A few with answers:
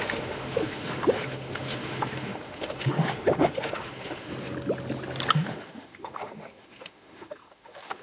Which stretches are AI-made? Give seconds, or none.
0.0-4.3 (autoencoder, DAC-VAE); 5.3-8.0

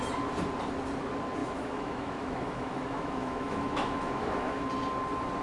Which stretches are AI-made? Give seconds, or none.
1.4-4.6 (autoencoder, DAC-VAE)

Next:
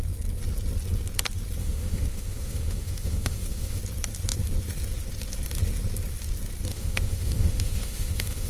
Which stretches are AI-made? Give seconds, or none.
1.6-3.8 (autoencoder, DAC-VAE); 6.7-8.5